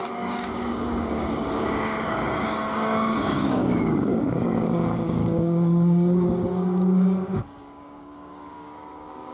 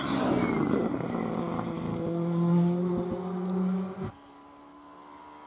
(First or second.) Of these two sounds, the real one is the second